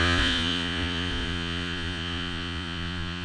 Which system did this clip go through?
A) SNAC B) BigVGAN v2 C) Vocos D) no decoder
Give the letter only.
C